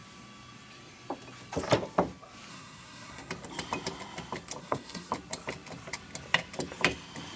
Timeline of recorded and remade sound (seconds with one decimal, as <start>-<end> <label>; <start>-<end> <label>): 0.0-2.5 recorded; 2.5-3.3 remade; 3.3-4.6 recorded; 4.6-5.1 remade; 5.1-7.4 recorded

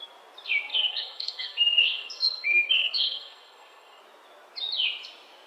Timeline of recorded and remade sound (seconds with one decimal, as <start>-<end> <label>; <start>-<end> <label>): 0.0-0.7 recorded; 0.7-4.0 remade; 4.0-5.5 recorded

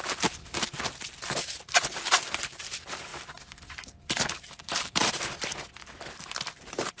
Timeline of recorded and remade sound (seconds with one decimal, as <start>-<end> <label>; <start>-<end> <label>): 0.0-5.0 remade; 5.0-6.2 recorded; 6.2-7.0 remade

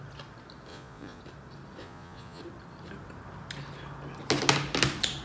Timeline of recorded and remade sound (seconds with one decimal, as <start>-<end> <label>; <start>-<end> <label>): 0.0-0.7 recorded; 0.7-1.2 remade; 1.2-1.8 recorded; 1.8-2.4 remade; 2.4-5.2 recorded

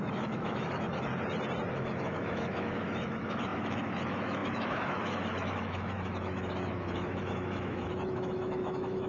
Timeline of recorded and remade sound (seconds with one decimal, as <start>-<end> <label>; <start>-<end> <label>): 0.0-1.1 remade; 1.1-1.7 recorded; 1.7-9.1 remade

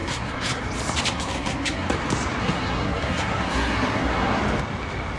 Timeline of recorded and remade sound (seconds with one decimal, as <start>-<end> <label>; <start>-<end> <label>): 0.0-0.6 remade; 0.6-1.1 recorded; 1.1-1.9 remade; 1.9-2.4 recorded; 2.4-4.4 remade; 4.4-5.2 recorded

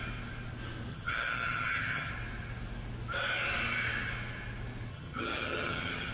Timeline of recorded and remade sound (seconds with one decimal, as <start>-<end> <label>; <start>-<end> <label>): 0.0-0.9 recorded; 0.9-2.1 remade; 2.1-4.9 recorded; 4.9-6.1 remade

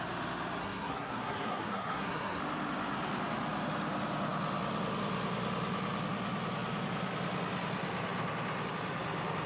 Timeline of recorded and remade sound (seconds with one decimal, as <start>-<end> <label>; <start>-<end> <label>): 0.0-0.6 recorded; 0.6-2.4 remade; 2.4-9.5 recorded